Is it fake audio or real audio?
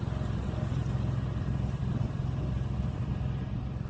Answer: real